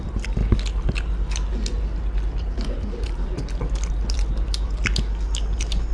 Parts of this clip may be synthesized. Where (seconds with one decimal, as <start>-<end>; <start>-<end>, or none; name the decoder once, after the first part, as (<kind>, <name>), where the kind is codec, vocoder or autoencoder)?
none